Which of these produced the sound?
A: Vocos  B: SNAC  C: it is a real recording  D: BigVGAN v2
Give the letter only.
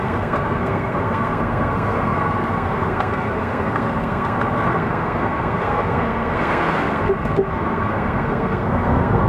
B